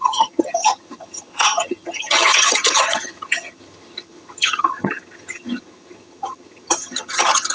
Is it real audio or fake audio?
fake